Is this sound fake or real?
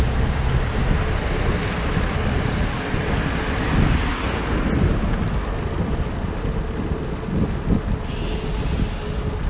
real